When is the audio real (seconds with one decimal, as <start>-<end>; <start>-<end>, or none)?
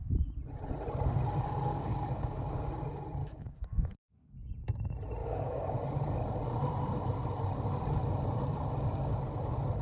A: 0.0-1.7; 2.7-3.2; 4.5-5.2; 5.8-9.8